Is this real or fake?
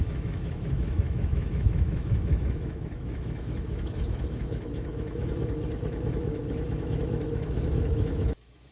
fake